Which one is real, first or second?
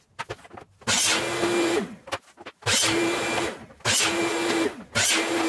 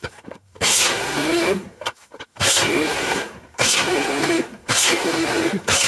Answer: first